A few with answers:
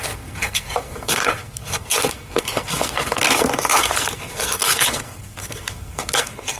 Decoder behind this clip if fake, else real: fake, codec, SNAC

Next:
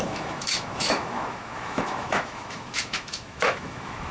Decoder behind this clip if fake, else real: fake, autoencoder, DAC-VAE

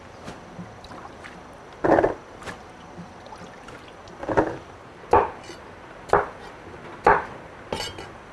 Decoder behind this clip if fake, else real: real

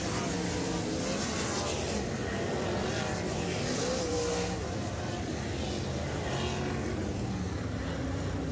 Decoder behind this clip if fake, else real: real